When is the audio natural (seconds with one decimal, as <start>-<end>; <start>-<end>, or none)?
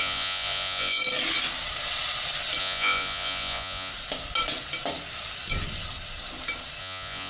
1.0-2.6; 3.9-6.8